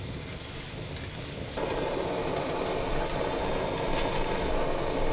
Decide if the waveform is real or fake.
real